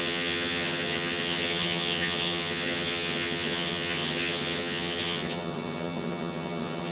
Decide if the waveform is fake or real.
fake